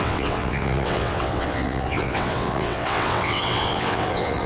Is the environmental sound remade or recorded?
remade